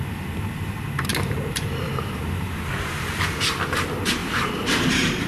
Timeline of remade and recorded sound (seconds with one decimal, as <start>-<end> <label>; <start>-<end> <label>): 0.0-1.1 recorded; 1.1-3.2 remade; 3.2-4.2 recorded; 4.2-5.3 remade